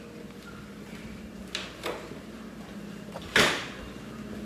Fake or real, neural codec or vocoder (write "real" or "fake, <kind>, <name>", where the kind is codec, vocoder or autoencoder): real